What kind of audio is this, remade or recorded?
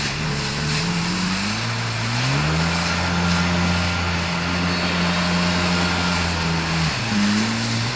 recorded